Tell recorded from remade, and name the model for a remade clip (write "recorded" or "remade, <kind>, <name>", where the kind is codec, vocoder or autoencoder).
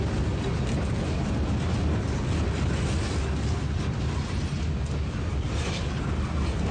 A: recorded